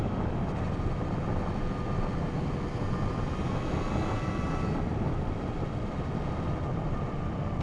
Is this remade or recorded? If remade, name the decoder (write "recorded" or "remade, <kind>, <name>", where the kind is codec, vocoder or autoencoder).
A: recorded